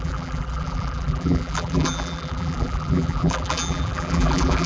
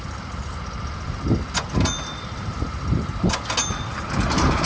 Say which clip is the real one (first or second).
second